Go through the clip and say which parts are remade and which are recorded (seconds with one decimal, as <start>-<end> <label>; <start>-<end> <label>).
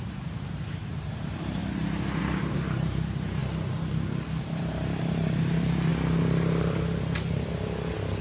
0.0-1.6 remade; 1.6-2.2 recorded; 2.2-3.4 remade; 3.4-4.4 recorded; 4.4-5.9 remade; 5.9-8.2 recorded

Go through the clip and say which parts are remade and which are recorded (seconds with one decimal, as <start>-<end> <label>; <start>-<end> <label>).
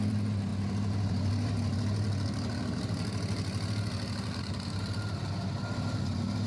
0.0-6.5 recorded